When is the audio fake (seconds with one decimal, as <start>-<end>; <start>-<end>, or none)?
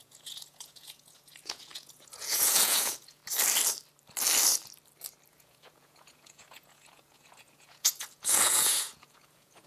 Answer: 0.0-3.2; 5.3-9.7